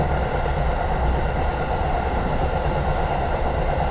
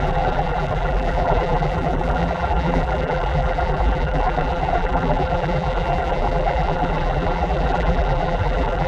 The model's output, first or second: second